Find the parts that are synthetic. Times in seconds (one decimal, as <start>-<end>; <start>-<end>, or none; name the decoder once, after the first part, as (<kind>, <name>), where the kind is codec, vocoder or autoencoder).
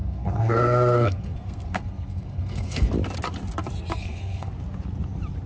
0.0-2.9 (codec, SNAC); 4.0-4.5